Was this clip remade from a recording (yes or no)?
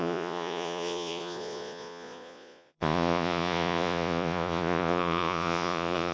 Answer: yes